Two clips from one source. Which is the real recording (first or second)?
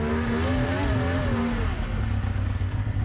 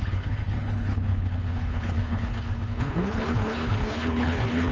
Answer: first